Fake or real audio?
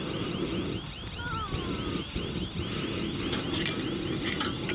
real